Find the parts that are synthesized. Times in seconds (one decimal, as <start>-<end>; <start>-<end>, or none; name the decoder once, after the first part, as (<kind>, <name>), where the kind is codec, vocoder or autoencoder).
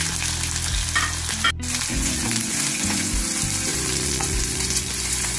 1.9-3.2 (vocoder, Vocos); 3.7-5.4